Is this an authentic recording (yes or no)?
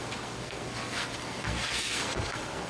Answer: no